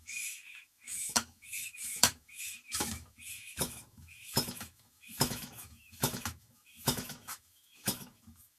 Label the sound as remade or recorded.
remade